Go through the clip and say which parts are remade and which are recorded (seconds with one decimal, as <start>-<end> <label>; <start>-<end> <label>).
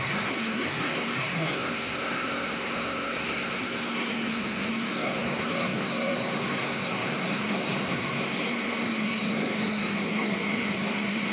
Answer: 0.0-11.3 remade